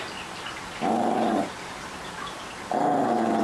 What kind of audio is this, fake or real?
real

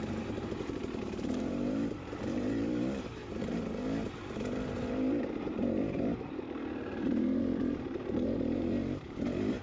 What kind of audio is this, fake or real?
fake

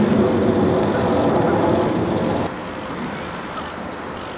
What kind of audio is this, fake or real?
real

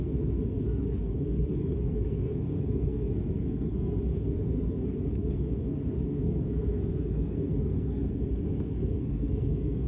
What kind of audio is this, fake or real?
fake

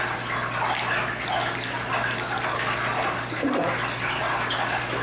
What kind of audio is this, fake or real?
real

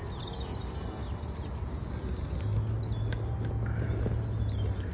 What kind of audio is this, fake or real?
real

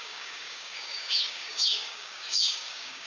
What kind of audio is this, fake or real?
fake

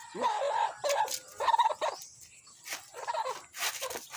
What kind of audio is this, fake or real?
real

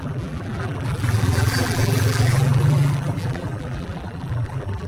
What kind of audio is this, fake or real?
fake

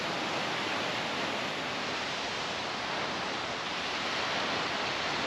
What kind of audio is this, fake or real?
real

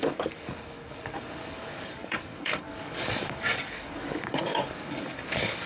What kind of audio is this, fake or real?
fake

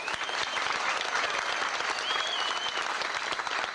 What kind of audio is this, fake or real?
real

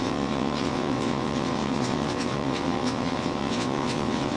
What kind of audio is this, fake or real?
fake